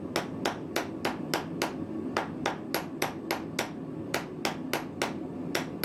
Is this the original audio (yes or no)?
yes